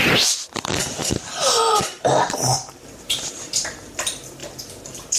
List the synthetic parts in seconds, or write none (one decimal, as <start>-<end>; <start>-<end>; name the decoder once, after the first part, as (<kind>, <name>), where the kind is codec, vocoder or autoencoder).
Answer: 0.8-3.9 (vocoder, BigVGAN v2)